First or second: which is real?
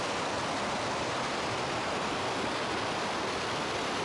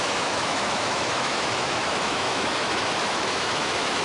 first